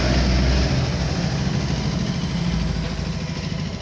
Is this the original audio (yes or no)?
yes